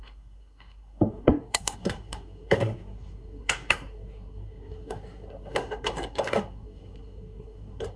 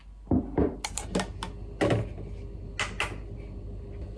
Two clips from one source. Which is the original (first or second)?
second